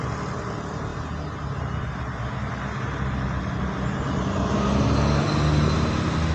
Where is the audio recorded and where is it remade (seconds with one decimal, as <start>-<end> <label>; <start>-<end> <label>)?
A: 0.0-6.3 recorded